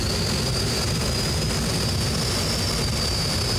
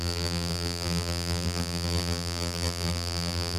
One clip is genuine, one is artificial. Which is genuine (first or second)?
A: first